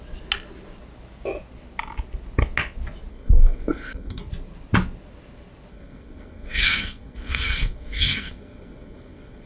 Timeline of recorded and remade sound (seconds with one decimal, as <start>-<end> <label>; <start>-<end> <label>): 0.0-3.1 recorded; 3.1-4.2 remade; 4.2-5.7 recorded; 5.7-9.5 remade